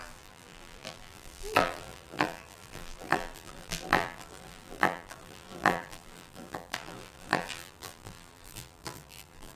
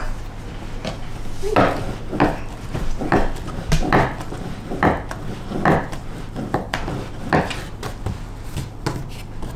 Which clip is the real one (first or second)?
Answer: second